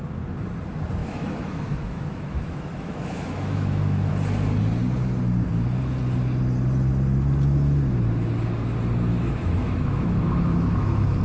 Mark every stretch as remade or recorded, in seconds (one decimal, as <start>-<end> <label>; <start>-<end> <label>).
0.0-1.0 recorded; 1.0-4.1 remade; 4.1-9.1 recorded; 9.1-11.2 remade

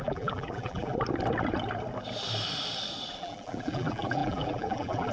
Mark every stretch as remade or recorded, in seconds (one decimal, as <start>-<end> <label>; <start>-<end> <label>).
0.0-0.9 remade; 0.9-3.2 recorded; 3.2-5.1 remade